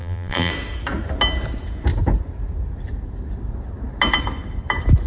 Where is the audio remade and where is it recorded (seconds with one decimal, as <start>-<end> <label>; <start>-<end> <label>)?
0.0-0.5 remade; 0.5-5.1 recorded